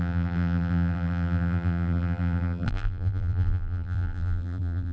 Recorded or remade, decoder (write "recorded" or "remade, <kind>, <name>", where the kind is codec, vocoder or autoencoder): remade, vocoder, BigVGAN v2